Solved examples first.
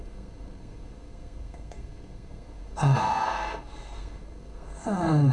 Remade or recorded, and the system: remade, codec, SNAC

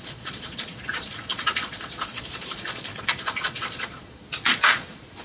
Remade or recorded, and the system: remade, vocoder, Vocos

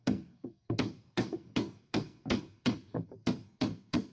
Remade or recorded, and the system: remade, codec, SNAC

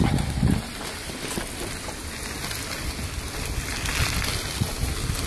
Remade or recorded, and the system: recorded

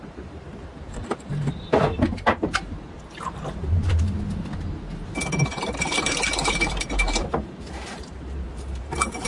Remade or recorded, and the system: remade, vocoder, BigVGAN v2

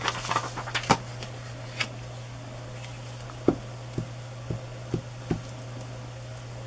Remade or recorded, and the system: recorded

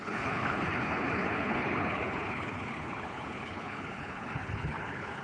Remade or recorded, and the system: remade, codec, HILCodec